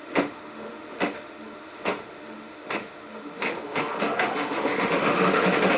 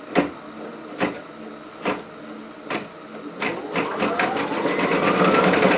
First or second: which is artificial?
first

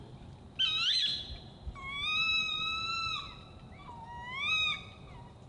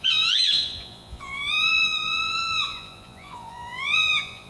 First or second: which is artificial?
second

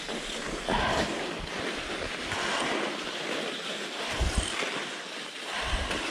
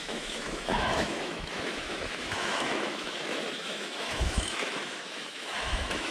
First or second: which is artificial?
second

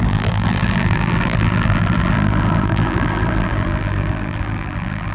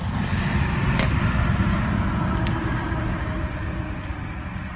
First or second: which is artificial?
first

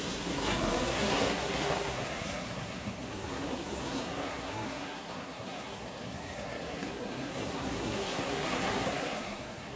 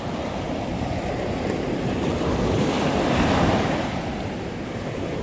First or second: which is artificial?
first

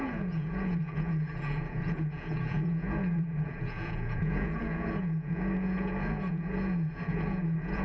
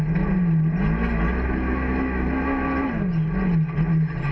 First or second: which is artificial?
first